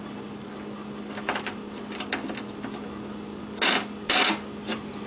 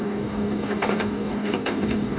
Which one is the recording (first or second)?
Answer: first